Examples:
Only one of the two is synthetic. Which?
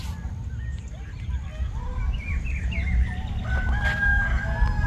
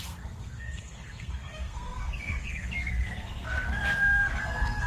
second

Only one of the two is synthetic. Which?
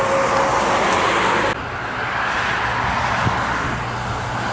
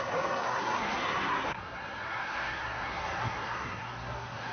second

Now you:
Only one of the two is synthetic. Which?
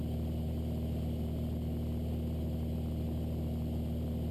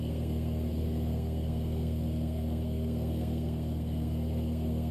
second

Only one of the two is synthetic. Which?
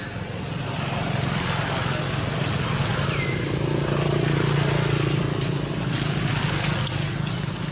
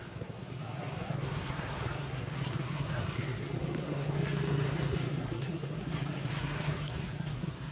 second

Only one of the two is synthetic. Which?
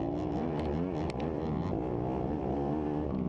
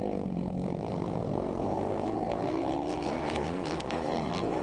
second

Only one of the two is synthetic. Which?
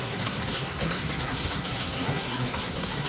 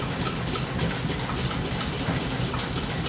first